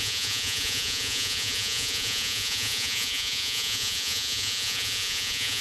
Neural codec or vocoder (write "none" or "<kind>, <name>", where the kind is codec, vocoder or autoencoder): vocoder, Vocos